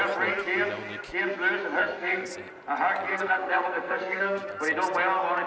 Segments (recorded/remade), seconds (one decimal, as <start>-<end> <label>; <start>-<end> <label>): 0.0-1.8 recorded; 1.8-2.3 remade; 2.3-3.1 recorded; 3.1-4.5 remade; 4.5-5.5 recorded